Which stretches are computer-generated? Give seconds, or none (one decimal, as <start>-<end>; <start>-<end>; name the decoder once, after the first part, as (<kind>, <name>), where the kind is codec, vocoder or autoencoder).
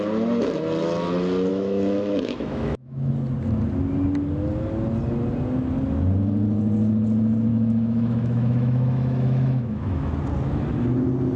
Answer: 1.5-3.1 (autoencoder, DAC-VAE); 7.5-10.1